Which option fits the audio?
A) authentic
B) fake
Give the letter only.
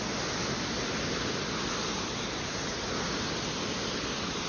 A